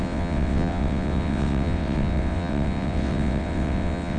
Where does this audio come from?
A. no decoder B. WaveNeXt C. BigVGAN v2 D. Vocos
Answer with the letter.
B